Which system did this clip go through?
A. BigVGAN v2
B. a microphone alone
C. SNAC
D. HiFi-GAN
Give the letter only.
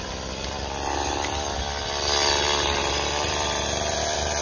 A